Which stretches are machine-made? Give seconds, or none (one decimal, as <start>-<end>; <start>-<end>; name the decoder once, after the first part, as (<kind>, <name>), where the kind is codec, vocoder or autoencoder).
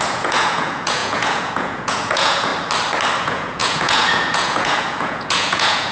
0.0-2.5 (vocoder, Vocos); 3.2-5.9